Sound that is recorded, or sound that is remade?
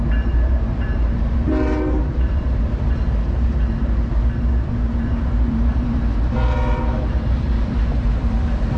remade